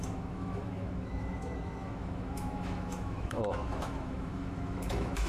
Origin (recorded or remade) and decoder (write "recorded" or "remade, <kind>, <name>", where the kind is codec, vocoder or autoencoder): remade, autoencoder, DAC-VAE